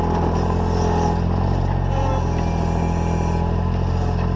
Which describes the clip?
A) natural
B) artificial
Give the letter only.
A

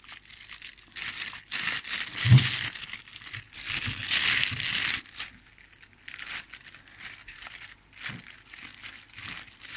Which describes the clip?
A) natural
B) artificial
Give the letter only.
A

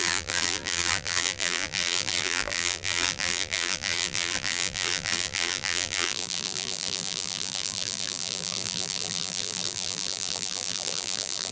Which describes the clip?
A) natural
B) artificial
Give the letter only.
B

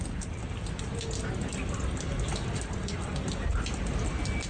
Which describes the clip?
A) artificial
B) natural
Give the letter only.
B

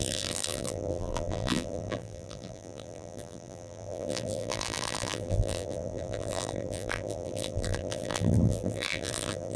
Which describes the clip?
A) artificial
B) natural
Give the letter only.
A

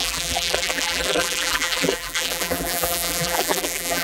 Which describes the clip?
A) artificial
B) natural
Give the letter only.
A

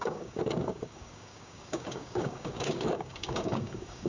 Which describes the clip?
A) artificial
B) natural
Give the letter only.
A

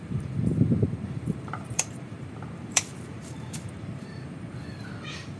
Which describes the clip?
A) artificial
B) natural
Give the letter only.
A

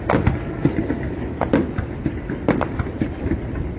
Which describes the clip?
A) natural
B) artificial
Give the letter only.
A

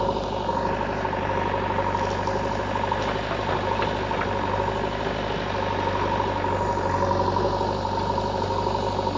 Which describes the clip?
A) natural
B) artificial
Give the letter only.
A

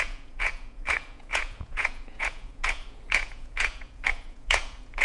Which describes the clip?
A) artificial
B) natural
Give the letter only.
A